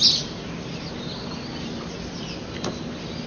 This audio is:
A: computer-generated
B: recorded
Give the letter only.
B